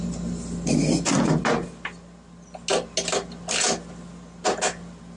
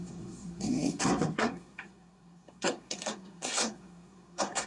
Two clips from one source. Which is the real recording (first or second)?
first